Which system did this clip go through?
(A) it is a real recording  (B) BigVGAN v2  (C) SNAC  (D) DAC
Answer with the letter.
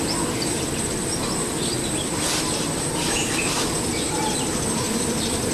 A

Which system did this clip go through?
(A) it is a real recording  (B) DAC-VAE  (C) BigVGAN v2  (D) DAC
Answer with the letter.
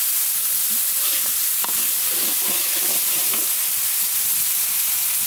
A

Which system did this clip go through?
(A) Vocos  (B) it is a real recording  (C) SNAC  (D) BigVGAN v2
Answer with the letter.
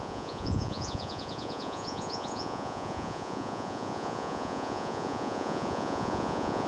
A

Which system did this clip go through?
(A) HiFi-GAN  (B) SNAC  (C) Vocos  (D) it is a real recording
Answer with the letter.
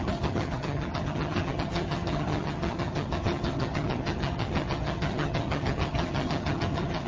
A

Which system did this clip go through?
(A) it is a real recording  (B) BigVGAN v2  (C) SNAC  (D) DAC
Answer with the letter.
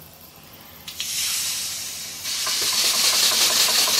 B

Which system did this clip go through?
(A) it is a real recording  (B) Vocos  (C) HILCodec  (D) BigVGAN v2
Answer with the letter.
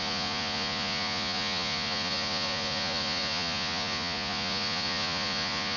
B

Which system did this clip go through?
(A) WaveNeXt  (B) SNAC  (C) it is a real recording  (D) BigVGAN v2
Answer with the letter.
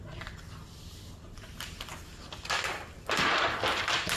C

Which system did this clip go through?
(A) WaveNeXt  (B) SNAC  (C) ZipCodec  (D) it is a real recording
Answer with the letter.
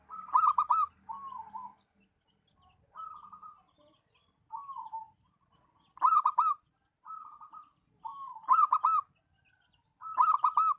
D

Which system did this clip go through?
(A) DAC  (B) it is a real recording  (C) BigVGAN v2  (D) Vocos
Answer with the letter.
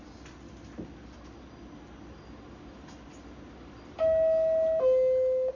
B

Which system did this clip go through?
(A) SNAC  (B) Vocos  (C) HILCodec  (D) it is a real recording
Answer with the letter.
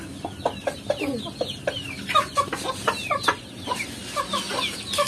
D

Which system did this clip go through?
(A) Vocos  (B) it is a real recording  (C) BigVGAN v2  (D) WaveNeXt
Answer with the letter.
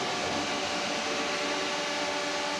B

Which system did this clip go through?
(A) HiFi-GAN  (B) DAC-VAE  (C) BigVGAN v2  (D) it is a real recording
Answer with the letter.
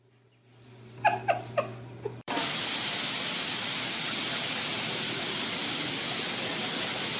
C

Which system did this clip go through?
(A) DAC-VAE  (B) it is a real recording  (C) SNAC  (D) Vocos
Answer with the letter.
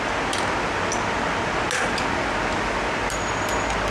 B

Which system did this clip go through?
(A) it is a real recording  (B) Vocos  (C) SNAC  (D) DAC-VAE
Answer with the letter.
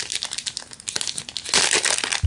A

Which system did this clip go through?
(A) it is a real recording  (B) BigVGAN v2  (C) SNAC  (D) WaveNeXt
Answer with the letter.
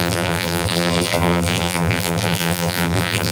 B